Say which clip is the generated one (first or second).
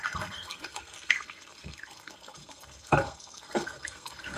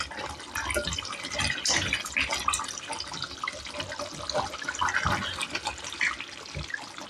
first